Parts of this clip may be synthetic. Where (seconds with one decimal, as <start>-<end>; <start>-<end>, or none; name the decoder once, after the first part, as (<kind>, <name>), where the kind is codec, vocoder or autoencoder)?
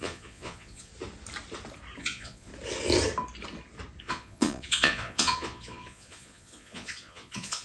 0.0-0.9 (vocoder, Vocos); 2.0-2.5; 4.0-7.6